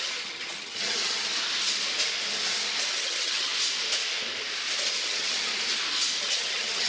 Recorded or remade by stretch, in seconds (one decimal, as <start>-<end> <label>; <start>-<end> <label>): 0.0-1.3 remade; 1.3-2.9 recorded; 2.9-3.5 remade; 3.5-5.0 recorded; 5.0-5.5 remade; 5.5-6.2 recorded; 6.2-6.9 remade